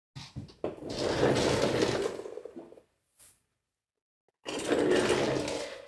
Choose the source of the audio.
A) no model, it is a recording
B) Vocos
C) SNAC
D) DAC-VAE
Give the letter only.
A